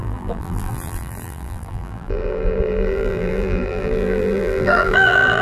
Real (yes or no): no